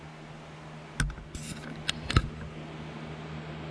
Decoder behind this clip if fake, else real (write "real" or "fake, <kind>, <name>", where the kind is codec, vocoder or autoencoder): real